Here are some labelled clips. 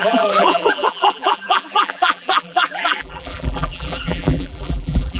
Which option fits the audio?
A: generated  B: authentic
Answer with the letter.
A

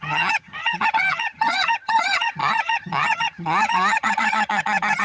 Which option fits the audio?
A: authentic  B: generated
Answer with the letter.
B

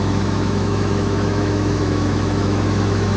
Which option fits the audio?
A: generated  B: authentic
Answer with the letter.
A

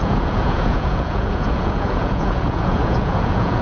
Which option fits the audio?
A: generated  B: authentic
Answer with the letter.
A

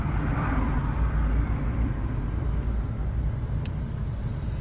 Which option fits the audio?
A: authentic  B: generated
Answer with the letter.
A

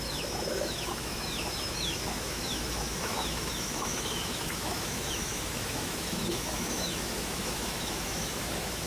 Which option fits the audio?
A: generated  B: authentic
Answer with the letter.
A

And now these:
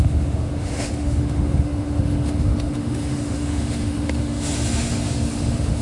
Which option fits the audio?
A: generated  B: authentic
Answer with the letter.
A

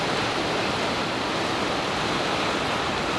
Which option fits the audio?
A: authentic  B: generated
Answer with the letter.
A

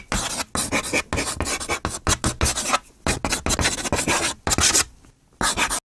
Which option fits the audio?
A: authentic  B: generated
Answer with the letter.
A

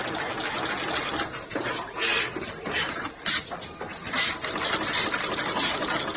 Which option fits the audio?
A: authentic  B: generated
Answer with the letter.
A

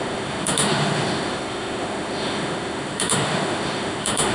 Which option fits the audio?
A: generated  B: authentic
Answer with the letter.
A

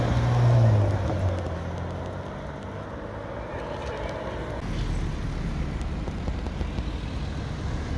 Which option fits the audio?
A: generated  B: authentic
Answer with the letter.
B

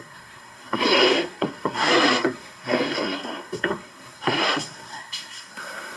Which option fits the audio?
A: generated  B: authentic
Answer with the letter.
A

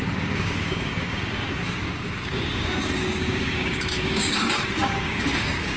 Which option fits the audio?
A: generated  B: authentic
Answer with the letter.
A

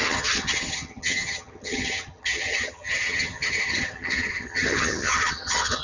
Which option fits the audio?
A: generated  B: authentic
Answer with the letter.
A